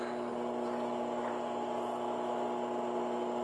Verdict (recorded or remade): recorded